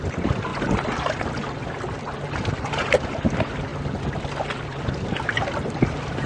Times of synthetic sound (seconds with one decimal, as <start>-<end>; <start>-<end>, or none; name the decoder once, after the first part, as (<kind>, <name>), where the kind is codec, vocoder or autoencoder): 0.0-0.5 (vocoder, BigVGAN v2); 1.8-6.3